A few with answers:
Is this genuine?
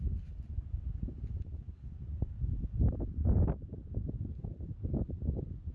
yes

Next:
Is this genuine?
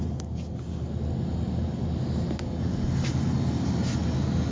yes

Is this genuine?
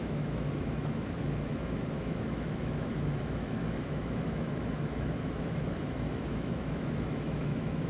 no